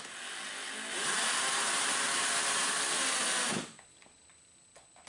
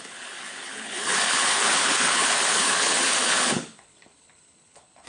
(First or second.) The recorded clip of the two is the first